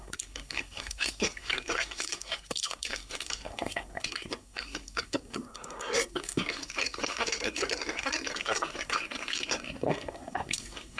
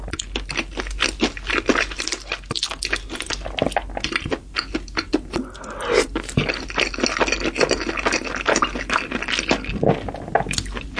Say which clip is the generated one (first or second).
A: first